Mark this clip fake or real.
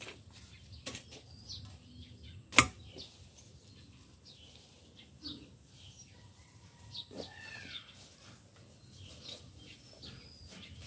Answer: real